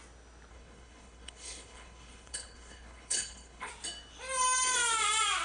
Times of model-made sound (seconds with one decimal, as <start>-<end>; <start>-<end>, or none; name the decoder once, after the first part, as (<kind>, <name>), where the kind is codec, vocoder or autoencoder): 0.5-3.7 (codec, HILCodec)